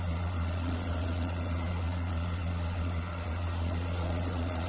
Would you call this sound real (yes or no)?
no